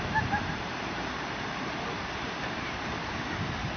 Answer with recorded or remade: remade